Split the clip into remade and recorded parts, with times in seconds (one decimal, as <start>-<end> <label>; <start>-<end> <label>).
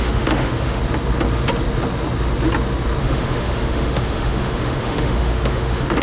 0.0-0.8 remade; 0.8-3.0 recorded; 3.0-6.0 remade